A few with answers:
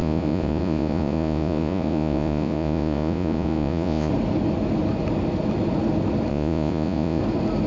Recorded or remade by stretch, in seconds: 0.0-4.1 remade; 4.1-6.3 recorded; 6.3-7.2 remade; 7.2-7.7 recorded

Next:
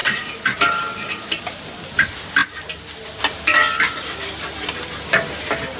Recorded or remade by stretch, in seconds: 0.0-1.9 remade; 1.9-5.8 recorded

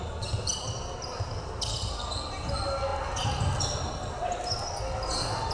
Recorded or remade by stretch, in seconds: 0.0-5.5 recorded

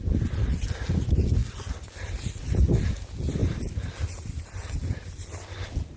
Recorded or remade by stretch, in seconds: 0.0-6.0 recorded

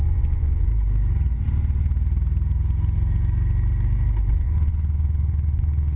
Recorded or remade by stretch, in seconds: 0.0-0.7 remade; 0.7-4.3 recorded; 4.3-6.0 remade

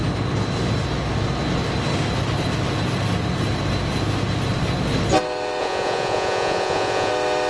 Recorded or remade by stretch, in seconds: 0.0-5.6 recorded; 5.6-7.1 remade; 7.1-7.5 recorded